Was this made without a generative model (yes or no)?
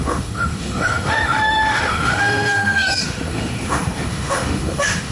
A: no